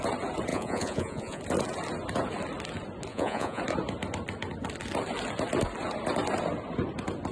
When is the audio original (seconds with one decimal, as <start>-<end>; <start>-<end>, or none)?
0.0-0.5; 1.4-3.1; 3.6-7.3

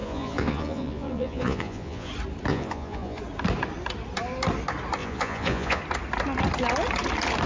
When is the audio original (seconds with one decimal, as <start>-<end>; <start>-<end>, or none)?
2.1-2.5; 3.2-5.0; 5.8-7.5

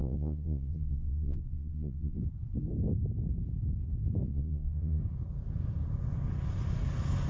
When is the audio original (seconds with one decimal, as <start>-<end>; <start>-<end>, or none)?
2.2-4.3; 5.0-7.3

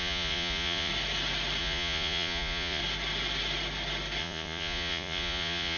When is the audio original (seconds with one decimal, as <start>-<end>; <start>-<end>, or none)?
0.9-1.6; 2.8-4.2